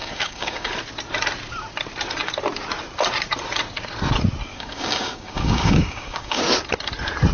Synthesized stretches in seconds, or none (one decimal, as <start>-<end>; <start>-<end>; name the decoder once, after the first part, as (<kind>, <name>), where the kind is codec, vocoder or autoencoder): 0.0-0.7 (codec, DAC); 4.5-6.4